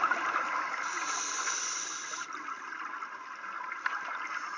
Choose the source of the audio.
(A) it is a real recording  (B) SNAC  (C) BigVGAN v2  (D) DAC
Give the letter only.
A